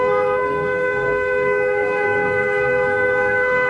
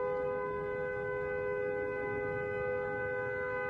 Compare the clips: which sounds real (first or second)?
second